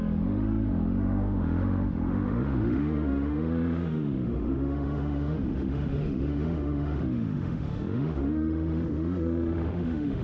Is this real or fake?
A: fake